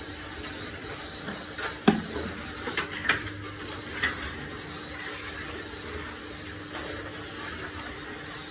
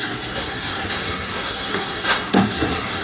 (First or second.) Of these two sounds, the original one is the first